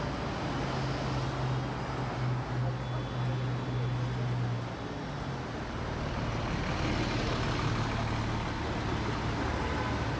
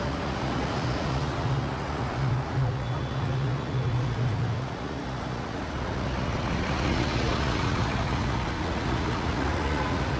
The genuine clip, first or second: first